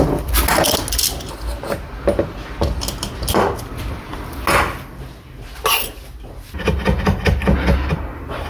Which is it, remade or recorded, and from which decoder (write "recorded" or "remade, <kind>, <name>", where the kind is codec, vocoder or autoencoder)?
recorded